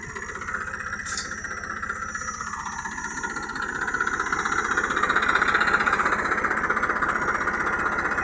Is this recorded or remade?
recorded